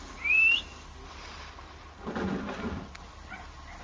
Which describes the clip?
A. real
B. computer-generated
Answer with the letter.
A